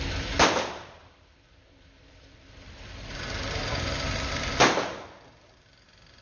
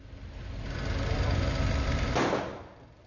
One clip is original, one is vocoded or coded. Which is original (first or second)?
second